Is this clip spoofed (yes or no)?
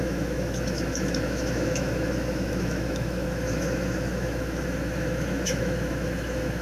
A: yes